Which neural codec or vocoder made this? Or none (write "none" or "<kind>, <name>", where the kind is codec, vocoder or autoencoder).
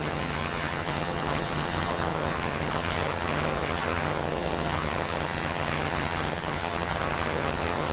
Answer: vocoder, HiFi-GAN